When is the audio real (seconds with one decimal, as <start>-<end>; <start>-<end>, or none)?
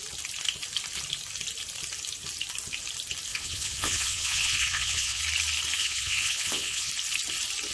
0.0-3.3; 5.2-5.8; 6.9-7.7